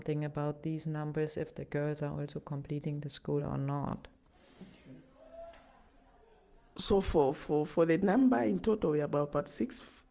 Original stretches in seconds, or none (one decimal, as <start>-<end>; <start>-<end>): 0.0-3.9; 7.3-10.1